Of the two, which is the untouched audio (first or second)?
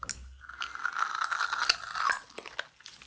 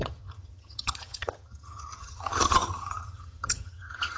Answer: first